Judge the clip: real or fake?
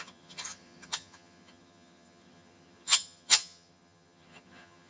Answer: fake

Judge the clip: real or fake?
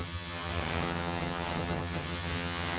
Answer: fake